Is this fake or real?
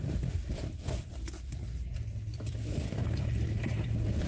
real